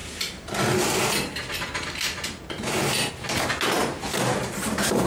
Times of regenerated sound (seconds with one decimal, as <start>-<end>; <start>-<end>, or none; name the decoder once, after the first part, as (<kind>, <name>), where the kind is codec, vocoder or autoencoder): 3.8-5.1 (vocoder, BigVGAN v2)